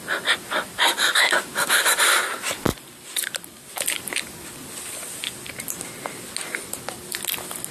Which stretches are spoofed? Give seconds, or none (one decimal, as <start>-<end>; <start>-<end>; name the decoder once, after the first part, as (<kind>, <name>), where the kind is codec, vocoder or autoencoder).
2.7-3.8 (vocoder, BigVGAN v2)